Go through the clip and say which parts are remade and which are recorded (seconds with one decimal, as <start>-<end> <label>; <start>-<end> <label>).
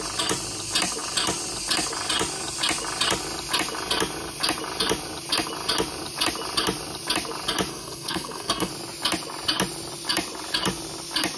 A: 0.0-7.7 recorded; 7.7-8.7 remade; 8.7-11.4 recorded